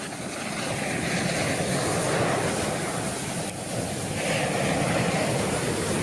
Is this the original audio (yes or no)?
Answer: yes